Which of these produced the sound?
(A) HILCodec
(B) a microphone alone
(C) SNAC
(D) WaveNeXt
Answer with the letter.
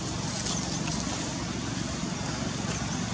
B